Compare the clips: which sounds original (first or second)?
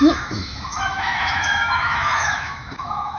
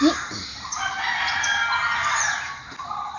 second